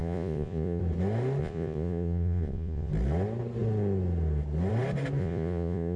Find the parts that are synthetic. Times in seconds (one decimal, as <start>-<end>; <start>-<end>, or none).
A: 0.0-0.8; 1.4-2.9; 5.2-6.0